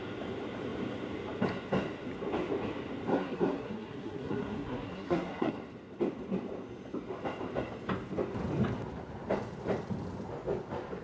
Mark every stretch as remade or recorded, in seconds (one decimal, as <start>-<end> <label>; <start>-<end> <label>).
0.0-3.1 recorded; 3.1-5.5 remade; 5.5-11.0 recorded